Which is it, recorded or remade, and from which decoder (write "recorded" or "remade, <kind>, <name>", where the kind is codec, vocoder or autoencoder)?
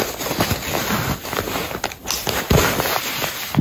recorded